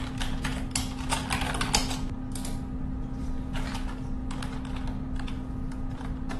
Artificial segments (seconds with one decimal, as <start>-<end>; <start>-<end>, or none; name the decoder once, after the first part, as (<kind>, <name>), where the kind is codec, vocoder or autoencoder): none